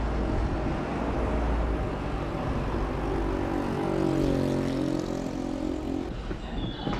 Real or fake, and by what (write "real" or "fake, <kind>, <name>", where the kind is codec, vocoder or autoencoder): real